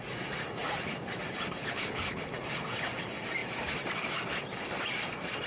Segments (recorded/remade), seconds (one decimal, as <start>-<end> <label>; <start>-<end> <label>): 0.0-1.6 recorded; 1.6-2.3 remade; 2.3-5.5 recorded